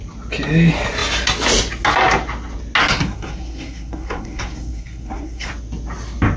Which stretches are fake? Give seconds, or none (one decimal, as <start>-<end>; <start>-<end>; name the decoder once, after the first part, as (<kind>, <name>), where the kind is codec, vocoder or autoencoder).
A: 2.8-5.5 (codec, SNAC)